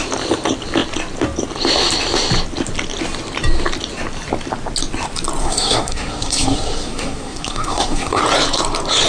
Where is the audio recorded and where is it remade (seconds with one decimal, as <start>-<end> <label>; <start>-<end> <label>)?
0.0-5.4 recorded; 5.4-8.2 remade; 8.2-9.1 recorded